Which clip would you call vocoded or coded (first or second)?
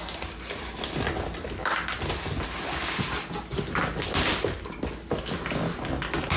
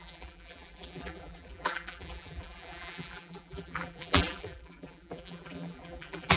second